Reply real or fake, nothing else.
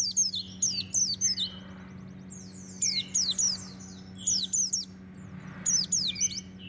real